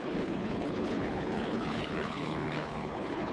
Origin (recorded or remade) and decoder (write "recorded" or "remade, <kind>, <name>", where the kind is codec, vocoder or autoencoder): remade, codec, HILCodec